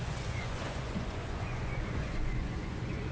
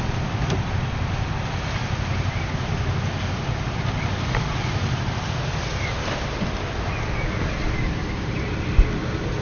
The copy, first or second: first